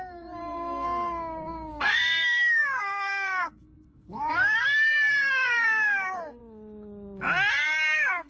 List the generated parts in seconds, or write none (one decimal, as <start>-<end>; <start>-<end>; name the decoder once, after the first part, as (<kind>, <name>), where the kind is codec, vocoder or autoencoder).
0.0-6.4 (codec, SNAC); 7.5-8.3